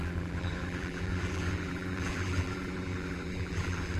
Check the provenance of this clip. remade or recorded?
remade